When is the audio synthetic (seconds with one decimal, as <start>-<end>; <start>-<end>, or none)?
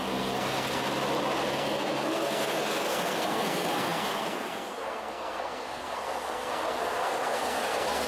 0.0-0.9; 1.5-8.1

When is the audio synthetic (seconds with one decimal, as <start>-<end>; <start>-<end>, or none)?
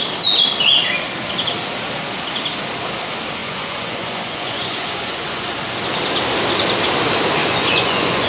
3.4-5.5; 7.4-8.3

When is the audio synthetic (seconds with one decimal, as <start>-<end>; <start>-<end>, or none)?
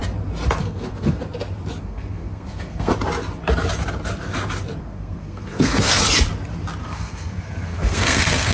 0.6-1.2; 1.8-2.9; 4.8-6.0; 6.8-8.5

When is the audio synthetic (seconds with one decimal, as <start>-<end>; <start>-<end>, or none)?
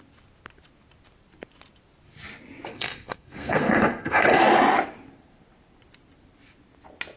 2.7-4.4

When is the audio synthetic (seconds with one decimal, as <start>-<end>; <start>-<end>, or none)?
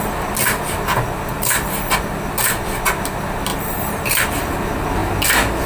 3.5-4.3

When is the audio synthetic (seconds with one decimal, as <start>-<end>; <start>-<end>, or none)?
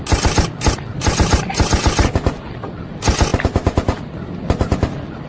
none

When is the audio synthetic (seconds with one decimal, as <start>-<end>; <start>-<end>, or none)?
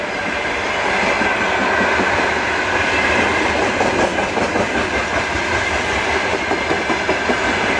none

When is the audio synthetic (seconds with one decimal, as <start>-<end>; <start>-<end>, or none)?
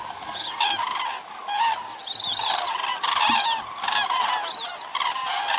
none